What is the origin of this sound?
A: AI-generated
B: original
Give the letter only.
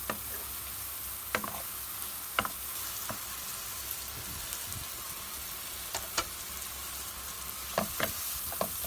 B